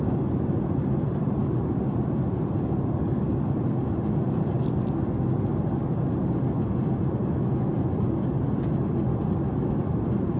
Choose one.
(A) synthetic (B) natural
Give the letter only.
B